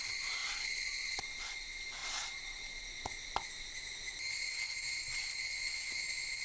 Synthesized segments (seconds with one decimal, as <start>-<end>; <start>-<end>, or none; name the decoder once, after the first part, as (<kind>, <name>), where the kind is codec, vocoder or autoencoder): none